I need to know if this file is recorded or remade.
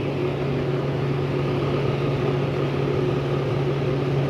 recorded